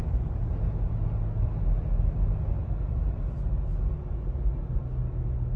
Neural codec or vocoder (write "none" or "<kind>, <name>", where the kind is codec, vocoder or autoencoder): none